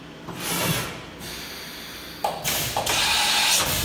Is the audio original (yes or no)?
yes